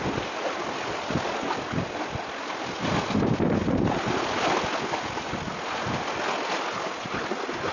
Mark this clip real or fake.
real